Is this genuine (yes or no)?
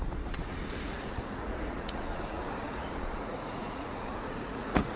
no